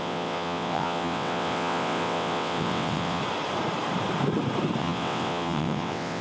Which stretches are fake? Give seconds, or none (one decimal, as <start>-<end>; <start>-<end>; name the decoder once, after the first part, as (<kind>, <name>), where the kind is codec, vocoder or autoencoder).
0.0-3.2 (vocoder, WaveNeXt); 4.8-6.2